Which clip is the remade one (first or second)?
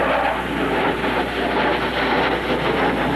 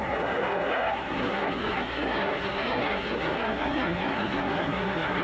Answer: second